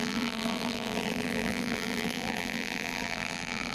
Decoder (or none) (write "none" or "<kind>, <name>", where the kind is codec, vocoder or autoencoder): vocoder, BigVGAN v2